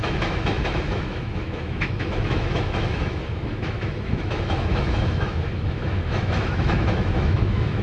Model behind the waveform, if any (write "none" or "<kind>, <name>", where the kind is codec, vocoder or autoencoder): autoencoder, DAC-VAE